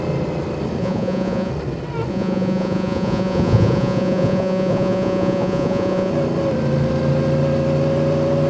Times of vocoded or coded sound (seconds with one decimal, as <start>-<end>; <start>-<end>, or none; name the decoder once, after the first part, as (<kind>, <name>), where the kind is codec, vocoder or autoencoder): 0.8-1.5 (vocoder, Vocos); 2.1-6.1